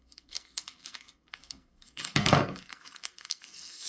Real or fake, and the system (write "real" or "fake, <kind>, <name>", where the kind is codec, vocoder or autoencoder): fake, codec, SNAC